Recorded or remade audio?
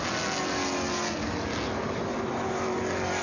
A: recorded